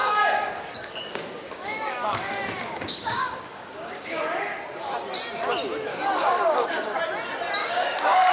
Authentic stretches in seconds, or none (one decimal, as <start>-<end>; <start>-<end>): 4.6-5.9; 7.0-7.6